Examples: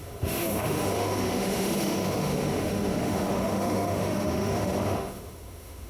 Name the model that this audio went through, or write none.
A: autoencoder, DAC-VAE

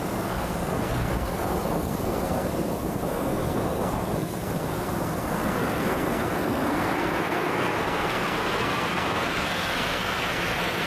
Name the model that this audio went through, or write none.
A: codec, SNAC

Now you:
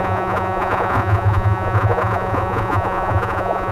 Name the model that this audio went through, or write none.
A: vocoder, Vocos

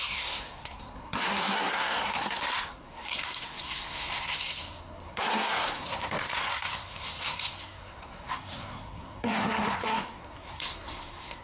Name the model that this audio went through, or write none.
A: codec, SNAC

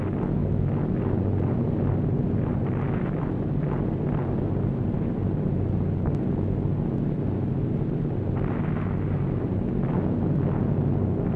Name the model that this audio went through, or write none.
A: none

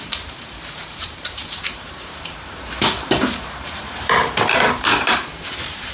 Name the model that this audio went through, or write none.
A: vocoder, BigVGAN v2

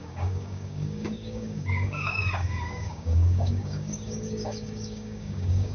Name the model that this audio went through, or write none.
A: codec, DAC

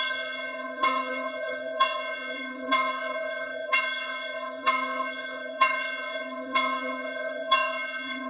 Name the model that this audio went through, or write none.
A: vocoder, HiFi-GAN